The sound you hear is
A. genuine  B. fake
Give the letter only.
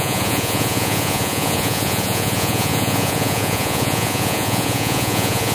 B